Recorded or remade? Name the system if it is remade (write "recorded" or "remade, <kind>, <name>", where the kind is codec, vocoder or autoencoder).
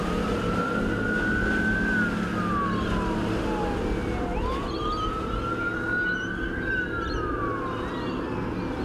recorded